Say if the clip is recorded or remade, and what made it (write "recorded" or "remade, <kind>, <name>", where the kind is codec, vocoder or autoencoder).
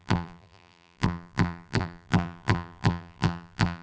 remade, vocoder, BigVGAN v2